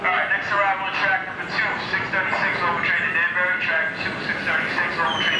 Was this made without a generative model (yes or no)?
yes